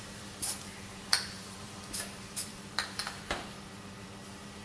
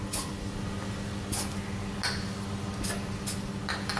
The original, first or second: second